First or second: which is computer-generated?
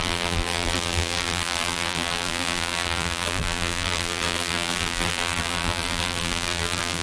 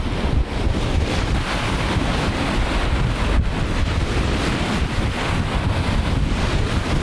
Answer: first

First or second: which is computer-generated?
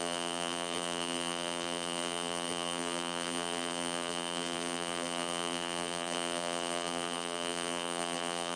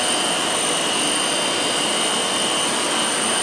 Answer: first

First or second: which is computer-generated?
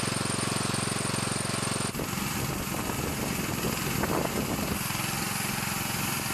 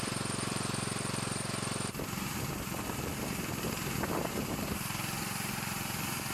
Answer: second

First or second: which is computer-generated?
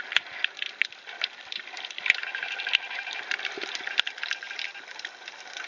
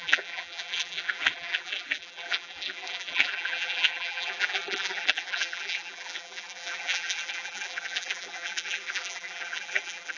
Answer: second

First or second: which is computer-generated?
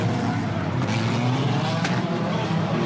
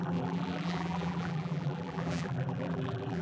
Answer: second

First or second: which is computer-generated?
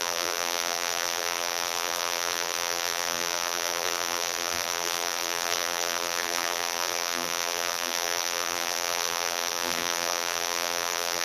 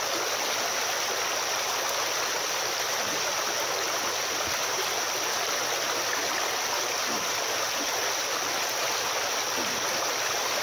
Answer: first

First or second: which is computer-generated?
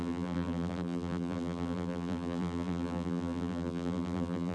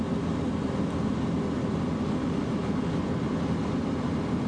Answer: first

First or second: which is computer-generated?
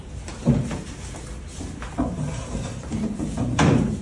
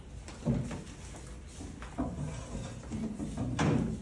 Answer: first